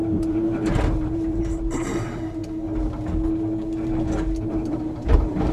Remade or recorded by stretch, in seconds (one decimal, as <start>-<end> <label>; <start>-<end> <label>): 0.0-2.4 remade; 2.4-4.5 recorded; 4.5-5.5 remade